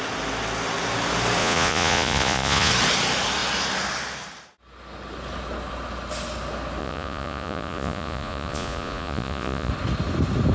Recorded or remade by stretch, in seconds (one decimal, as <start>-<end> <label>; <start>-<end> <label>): 0.0-1.4 recorded; 1.4-2.7 remade; 2.7-6.8 recorded; 6.8-9.7 remade; 9.7-10.5 recorded